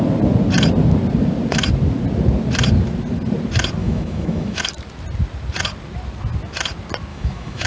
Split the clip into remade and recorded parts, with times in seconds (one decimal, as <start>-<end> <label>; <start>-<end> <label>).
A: 0.0-3.8 recorded; 3.8-4.6 remade; 4.6-7.1 recorded; 7.1-7.7 remade